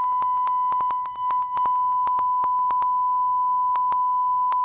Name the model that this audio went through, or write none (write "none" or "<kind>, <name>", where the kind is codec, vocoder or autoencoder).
none